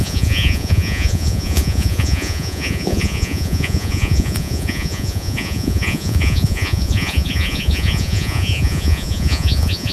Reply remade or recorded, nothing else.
remade